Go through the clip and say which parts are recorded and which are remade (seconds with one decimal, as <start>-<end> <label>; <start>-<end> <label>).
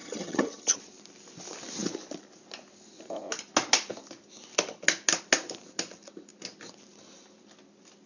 0.0-0.7 remade; 0.7-8.1 recorded